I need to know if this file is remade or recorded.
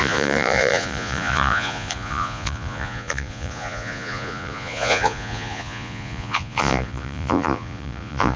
remade